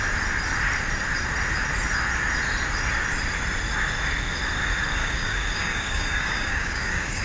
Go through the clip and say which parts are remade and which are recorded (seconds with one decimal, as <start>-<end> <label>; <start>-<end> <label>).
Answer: 0.0-5.0 recorded; 5.0-7.2 remade